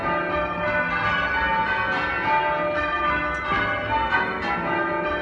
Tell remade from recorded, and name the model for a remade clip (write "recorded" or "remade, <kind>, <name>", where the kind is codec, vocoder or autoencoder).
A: recorded